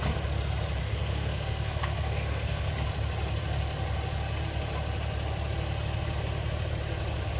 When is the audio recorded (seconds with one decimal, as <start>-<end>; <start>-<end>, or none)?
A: 0.0-0.8; 2.7-7.4

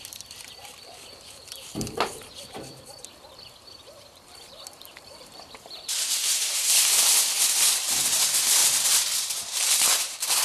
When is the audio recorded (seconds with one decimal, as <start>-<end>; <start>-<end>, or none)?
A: none